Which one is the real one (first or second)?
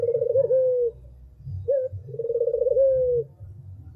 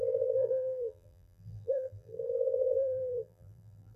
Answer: first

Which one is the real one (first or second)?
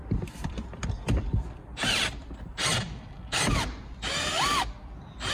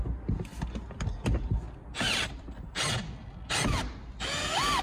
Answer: second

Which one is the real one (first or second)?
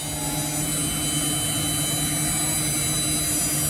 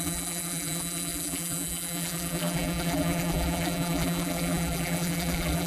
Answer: first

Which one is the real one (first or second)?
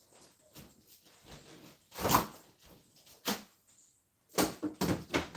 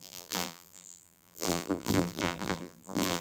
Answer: first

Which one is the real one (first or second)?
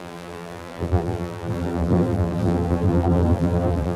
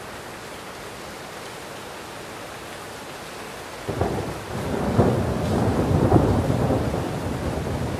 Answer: second